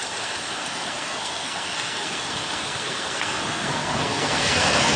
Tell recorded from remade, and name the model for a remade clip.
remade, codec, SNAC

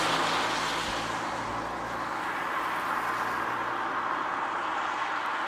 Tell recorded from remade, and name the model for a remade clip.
recorded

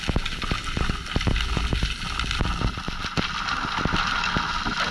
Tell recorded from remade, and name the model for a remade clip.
recorded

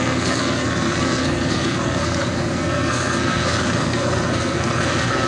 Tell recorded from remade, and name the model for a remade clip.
remade, codec, SNAC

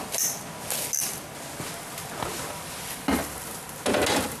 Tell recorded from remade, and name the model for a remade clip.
recorded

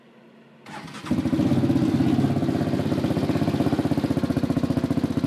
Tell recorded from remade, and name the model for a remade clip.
recorded